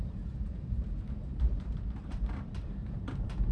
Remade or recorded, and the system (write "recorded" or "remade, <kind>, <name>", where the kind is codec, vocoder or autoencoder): remade, vocoder, BigVGAN v2